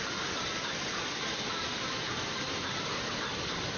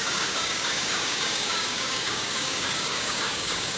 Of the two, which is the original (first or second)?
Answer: first